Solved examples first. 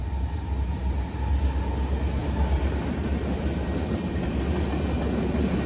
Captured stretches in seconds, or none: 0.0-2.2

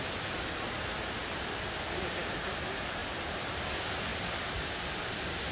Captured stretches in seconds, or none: 0.0-3.0; 3.6-4.1; 5.1-5.5

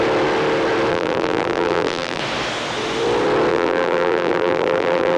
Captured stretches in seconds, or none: 0.0-0.9; 2.2-3.5

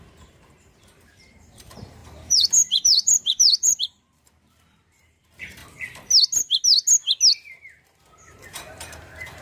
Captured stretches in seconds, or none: 5.6-7.3

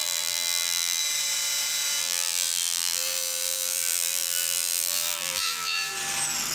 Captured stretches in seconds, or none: 1.0-2.0; 5.9-6.5

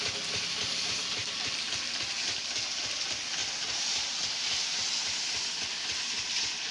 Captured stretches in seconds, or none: 1.2-2.8; 3.4-6.3

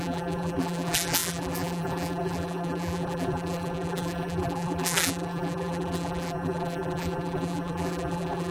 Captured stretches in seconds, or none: none

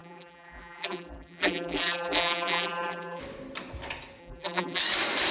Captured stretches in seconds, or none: 3.2-4.2; 4.8-5.3